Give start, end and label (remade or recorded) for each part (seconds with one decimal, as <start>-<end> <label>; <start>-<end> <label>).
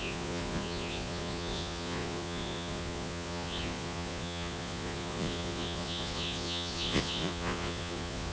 0.0-8.3 remade